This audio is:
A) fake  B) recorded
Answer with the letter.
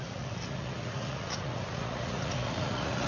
A